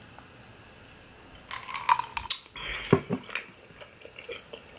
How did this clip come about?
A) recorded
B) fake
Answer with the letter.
A